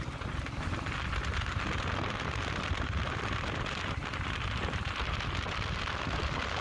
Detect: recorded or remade recorded